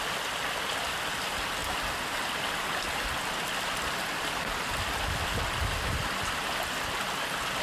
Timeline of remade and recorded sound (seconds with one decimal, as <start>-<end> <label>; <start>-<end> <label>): 0.0-7.6 recorded